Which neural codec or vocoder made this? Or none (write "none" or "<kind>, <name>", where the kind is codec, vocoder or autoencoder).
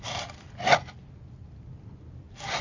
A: none